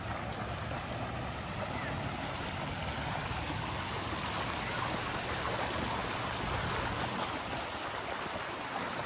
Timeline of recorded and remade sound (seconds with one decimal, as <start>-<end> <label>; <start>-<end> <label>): 0.0-9.1 recorded